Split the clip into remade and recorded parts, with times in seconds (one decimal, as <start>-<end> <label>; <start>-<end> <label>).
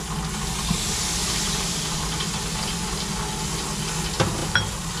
0.0-1.2 recorded; 1.2-2.2 remade; 2.2-5.0 recorded